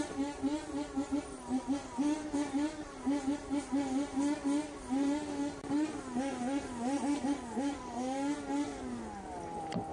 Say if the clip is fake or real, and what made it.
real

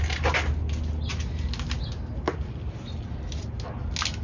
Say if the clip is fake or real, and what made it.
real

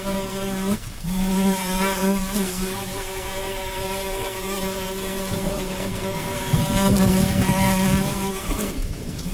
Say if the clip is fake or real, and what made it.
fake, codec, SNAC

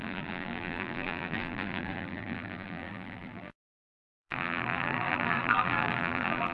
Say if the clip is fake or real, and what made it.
fake, vocoder, BigVGAN v2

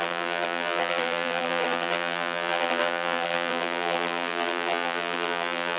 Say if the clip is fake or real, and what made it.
fake, vocoder, BigVGAN v2